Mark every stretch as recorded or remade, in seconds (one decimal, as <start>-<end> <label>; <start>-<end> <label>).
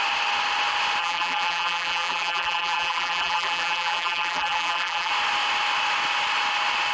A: 0.0-1.0 recorded; 1.0-5.1 remade; 5.1-6.9 recorded